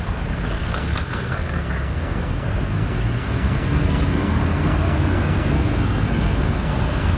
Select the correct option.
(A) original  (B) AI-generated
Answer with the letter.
B